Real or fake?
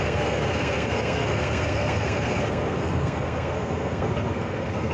fake